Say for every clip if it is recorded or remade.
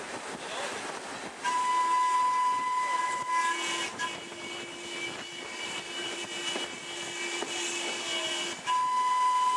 recorded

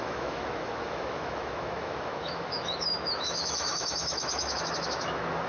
remade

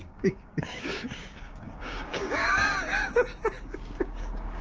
remade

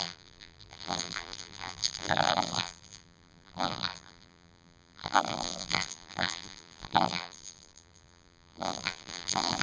remade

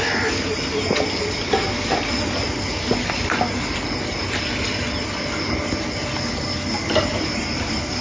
recorded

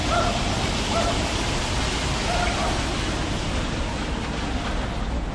recorded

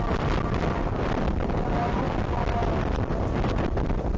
recorded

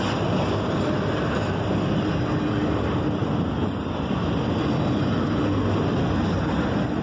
recorded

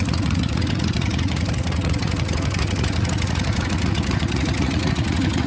remade